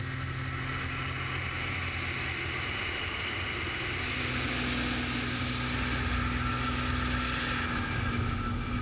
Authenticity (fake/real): real